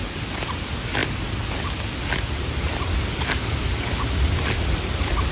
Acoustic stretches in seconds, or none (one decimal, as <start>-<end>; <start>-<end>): 0.0-5.3